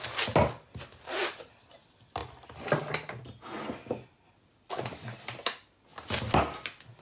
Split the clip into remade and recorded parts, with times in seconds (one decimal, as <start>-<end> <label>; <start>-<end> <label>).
0.0-7.0 recorded